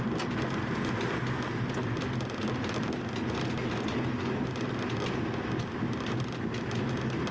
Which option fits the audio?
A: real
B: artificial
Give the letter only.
A